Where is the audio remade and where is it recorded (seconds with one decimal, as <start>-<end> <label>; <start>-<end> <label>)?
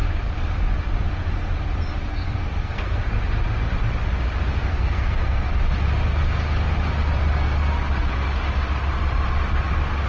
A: 0.0-2.1 recorded; 2.1-3.0 remade; 3.0-4.6 recorded; 4.6-5.5 remade; 5.5-10.1 recorded